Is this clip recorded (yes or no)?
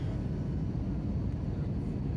yes